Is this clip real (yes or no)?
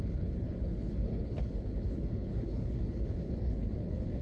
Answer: no